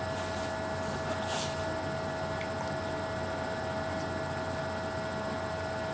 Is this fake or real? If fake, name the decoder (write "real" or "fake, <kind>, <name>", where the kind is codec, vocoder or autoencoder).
real